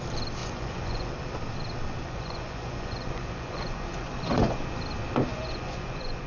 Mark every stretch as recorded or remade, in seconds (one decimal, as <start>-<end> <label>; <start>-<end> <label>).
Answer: 0.0-0.4 recorded; 0.4-1.1 remade; 1.1-2.0 recorded; 2.0-4.6 remade; 4.6-5.3 recorded; 5.3-6.3 remade